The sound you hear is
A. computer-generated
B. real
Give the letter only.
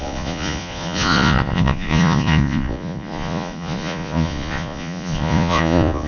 A